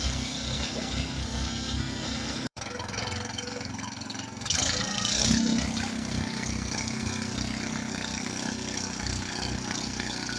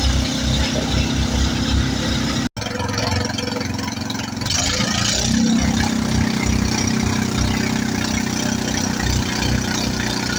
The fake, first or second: first